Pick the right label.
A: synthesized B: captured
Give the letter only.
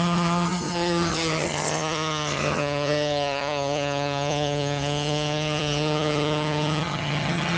A